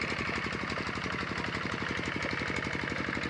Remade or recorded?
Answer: recorded